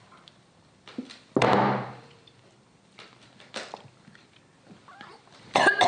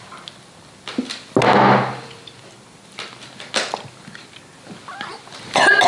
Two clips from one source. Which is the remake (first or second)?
first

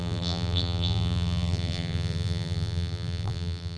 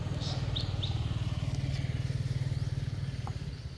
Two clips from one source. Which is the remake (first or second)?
first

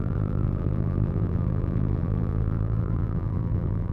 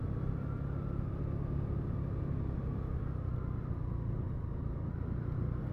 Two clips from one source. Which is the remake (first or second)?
first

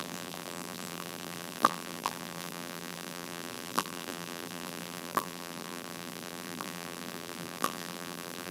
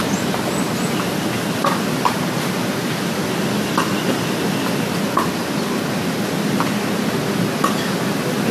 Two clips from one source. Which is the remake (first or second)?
first